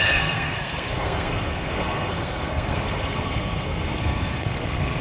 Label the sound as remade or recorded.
remade